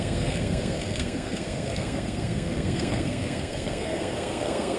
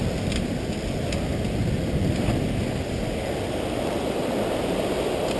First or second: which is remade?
first